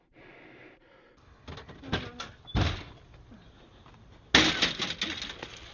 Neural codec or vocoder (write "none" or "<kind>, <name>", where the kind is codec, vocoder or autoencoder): none